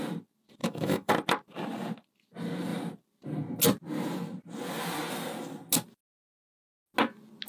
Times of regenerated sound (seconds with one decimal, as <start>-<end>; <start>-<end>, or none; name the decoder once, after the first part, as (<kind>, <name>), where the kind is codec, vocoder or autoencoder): 0.6-1.1 (autoencoder, DAC-VAE)